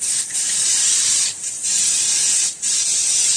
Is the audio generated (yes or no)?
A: no